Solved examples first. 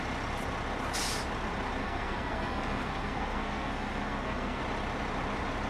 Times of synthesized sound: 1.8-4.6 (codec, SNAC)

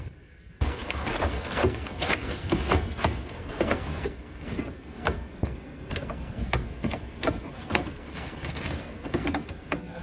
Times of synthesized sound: 0.0-10.0 (codec, SNAC)